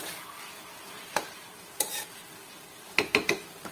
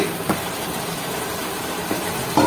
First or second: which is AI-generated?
second